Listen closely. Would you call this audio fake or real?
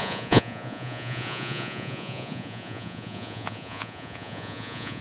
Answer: fake